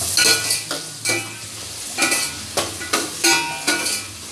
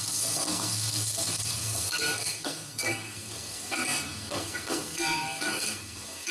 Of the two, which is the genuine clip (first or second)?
first